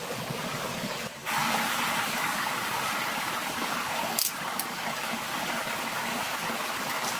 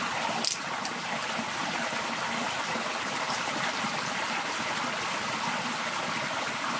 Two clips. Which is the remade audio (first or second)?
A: first